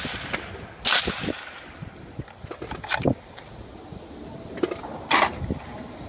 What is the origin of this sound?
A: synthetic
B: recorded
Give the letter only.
B